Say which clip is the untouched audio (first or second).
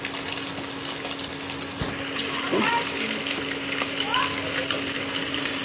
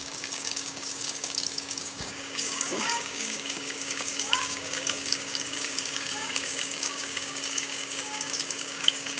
first